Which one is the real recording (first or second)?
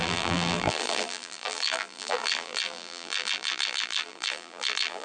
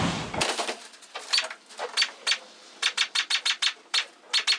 second